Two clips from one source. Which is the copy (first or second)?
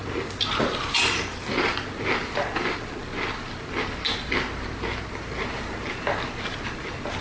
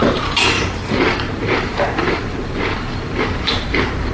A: second